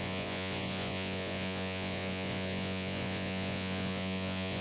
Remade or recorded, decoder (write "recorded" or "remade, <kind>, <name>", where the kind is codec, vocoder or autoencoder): remade, vocoder, Vocos